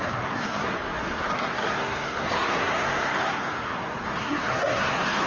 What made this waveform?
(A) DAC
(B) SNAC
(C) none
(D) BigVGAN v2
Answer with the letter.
B